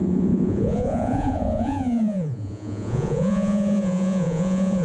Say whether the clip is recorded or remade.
remade